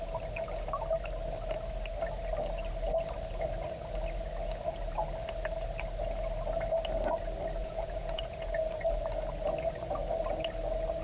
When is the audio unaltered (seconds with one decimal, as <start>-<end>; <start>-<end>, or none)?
0.0-7.6; 8.2-11.0